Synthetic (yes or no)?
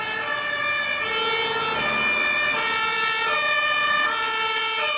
no